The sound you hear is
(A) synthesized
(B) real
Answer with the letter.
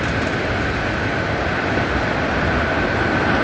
B